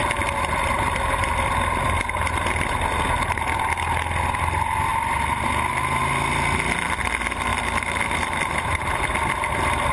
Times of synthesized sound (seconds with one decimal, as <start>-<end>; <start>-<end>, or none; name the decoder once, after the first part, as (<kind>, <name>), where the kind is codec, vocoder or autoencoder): 0.5-4.9 (vocoder, BigVGAN v2); 5.7-9.9